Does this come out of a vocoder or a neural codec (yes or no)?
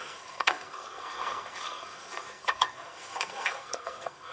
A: yes